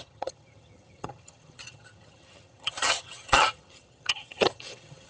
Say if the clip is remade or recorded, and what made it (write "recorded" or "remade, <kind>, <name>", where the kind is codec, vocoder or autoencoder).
remade, vocoder, HiFi-GAN